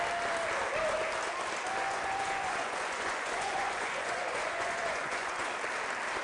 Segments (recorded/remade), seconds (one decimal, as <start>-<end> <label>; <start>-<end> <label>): 0.0-1.8 recorded; 1.8-5.5 remade; 5.5-6.2 recorded